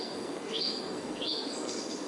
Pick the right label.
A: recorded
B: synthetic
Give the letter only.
B